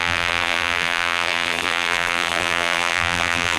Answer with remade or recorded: remade